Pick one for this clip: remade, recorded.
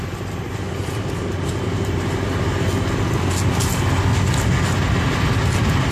recorded